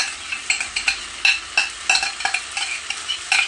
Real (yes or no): yes